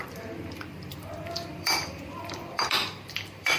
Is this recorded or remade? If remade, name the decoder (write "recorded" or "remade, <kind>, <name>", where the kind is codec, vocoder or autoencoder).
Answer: remade, vocoder, BigVGAN v2